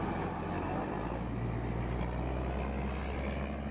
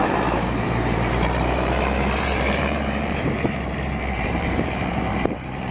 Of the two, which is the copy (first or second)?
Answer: second